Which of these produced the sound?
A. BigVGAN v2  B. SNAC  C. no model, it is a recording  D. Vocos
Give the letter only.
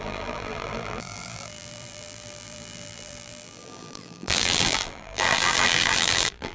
A